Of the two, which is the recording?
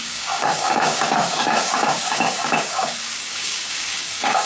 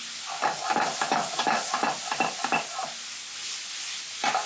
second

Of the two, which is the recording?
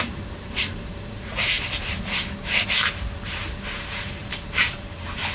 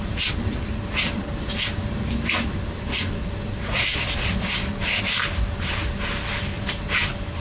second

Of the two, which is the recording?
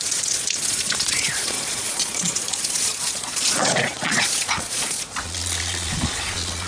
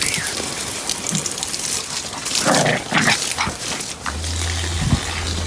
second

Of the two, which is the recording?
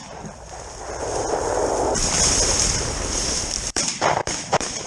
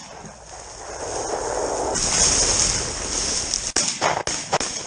second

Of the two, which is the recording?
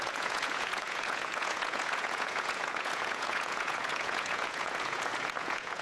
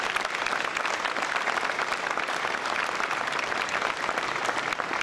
second